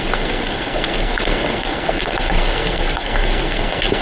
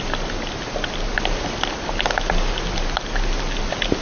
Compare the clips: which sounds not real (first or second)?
first